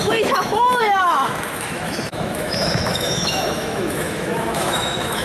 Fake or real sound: fake